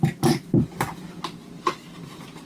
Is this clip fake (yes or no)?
no